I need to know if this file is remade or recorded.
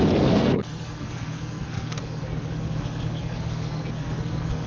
remade